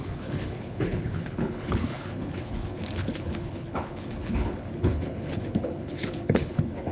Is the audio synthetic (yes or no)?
yes